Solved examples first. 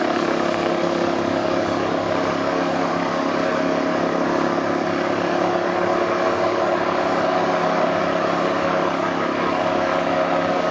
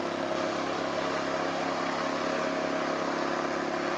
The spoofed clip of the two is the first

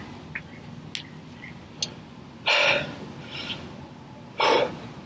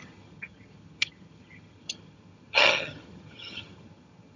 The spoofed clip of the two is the second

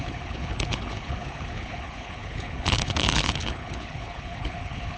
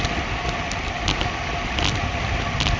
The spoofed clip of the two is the first